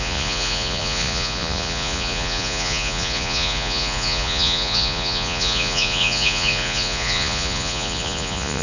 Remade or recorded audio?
remade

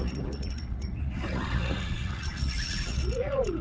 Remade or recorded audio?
remade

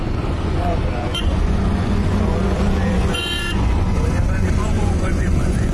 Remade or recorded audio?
remade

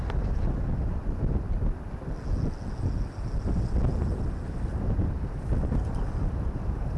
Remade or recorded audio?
recorded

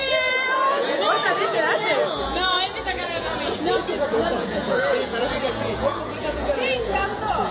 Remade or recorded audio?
remade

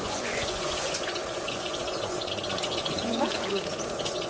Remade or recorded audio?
remade